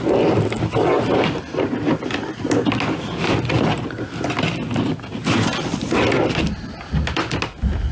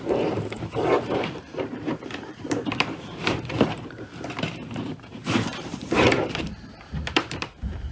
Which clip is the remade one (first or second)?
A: second